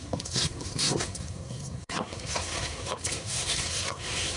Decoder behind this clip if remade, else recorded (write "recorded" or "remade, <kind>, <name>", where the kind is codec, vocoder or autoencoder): remade, codec, SNAC